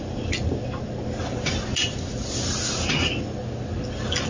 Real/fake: real